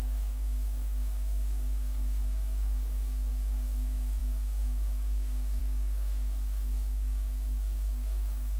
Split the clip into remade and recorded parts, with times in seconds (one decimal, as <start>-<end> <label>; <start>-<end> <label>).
0.0-8.6 remade